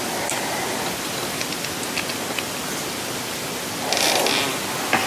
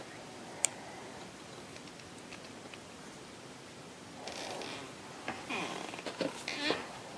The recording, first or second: first